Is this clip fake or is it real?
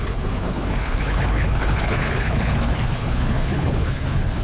fake